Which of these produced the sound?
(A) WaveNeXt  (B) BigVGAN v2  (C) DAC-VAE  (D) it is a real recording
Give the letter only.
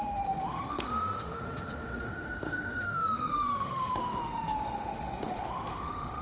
C